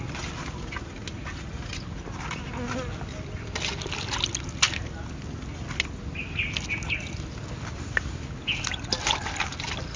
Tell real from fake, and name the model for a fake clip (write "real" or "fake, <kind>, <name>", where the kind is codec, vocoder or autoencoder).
real